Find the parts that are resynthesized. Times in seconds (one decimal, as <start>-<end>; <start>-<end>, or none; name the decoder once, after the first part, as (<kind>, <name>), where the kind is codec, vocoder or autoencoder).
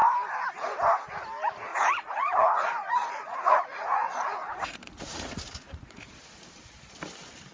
1.7-6.2 (vocoder, Vocos)